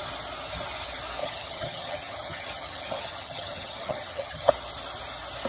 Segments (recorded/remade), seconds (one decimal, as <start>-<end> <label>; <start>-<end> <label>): 0.0-1.2 recorded; 1.2-4.5 remade; 4.5-5.5 recorded